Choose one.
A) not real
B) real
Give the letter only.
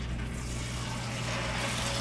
B